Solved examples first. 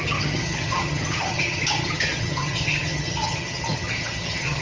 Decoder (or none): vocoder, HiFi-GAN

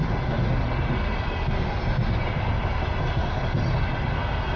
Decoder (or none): none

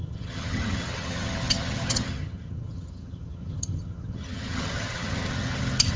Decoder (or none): vocoder, HiFi-GAN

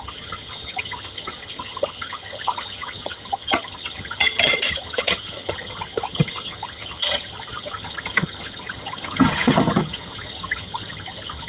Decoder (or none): vocoder, HiFi-GAN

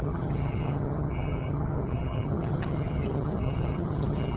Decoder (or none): vocoder, HiFi-GAN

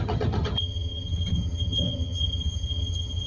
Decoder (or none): vocoder, HiFi-GAN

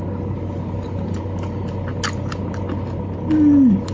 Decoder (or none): none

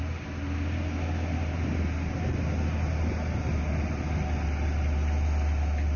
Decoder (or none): none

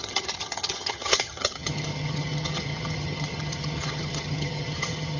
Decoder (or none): vocoder, HiFi-GAN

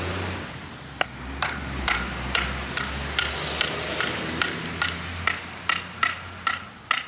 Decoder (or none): none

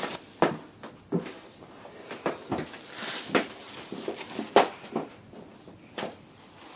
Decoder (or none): none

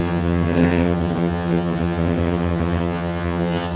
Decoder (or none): vocoder, HiFi-GAN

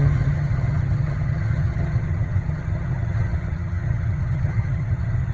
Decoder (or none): vocoder, HiFi-GAN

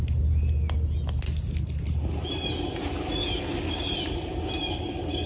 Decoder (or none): none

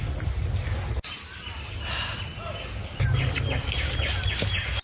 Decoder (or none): none